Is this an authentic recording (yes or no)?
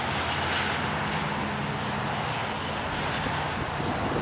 yes